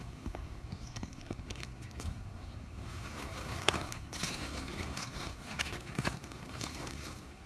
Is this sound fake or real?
fake